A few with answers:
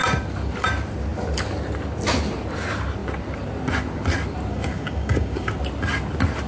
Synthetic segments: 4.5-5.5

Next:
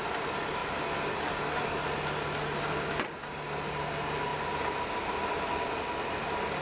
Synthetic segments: none

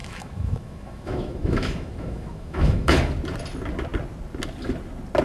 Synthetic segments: 0.0-3.1

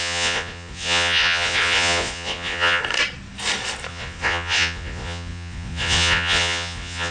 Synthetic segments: 0.0-2.8; 3.9-7.1